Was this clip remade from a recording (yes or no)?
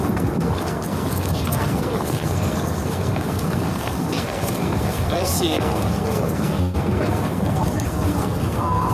yes